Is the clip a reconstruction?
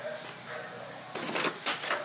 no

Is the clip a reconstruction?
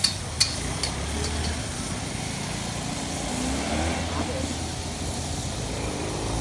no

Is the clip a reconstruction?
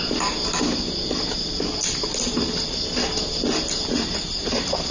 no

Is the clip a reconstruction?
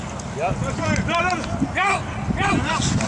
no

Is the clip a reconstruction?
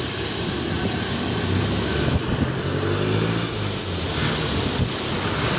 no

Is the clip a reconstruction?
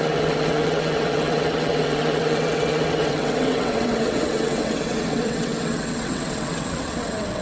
yes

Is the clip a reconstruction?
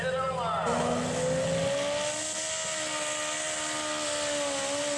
no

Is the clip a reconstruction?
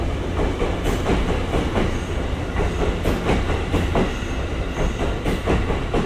no